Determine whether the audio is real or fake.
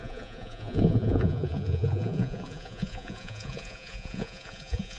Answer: fake